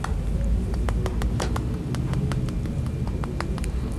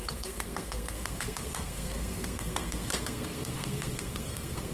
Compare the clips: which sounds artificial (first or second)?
second